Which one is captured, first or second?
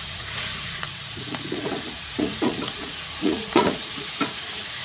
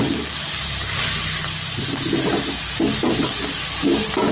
second